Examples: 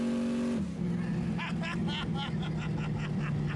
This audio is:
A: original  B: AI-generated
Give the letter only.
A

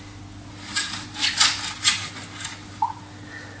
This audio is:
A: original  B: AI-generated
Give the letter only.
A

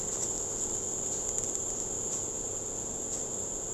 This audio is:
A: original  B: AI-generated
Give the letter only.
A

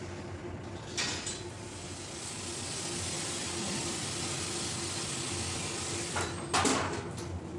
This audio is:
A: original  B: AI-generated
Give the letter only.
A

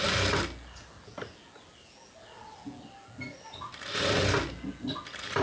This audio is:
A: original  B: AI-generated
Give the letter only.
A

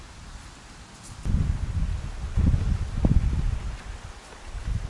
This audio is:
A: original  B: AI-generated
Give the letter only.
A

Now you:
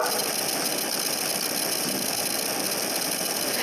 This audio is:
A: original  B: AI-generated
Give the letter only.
A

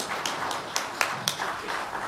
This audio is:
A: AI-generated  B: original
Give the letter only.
A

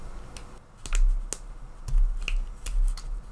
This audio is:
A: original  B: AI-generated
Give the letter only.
A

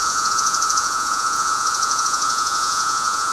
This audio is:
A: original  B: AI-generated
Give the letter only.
B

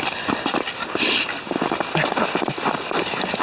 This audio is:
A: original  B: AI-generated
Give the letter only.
A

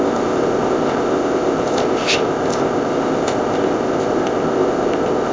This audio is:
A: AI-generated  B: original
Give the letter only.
A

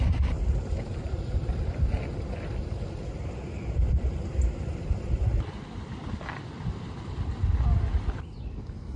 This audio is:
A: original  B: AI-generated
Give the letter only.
A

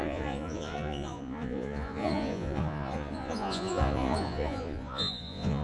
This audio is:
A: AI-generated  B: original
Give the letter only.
A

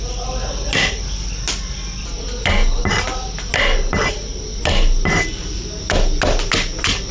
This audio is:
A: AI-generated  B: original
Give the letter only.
B